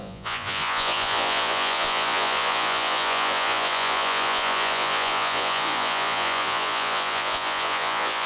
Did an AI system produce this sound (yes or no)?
yes